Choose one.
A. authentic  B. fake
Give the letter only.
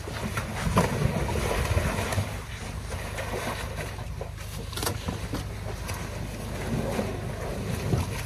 A